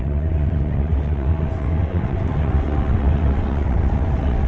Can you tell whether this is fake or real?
fake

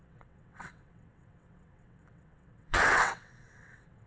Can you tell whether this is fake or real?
fake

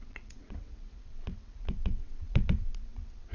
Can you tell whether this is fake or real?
fake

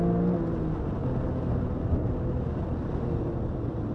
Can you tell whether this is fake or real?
real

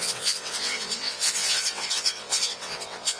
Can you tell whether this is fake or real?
fake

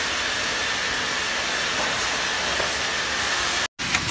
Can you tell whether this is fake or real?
real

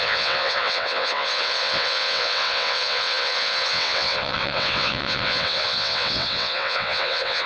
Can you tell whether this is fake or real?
fake